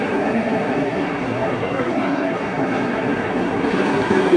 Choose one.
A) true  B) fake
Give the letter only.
B